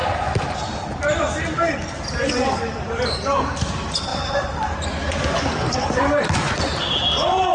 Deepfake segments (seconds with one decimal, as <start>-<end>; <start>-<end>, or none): 0.0-3.0; 4.1-6.2